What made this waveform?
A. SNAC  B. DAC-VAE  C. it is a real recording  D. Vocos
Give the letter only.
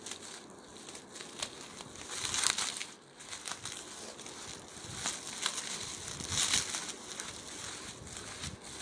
C